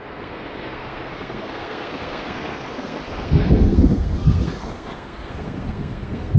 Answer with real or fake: fake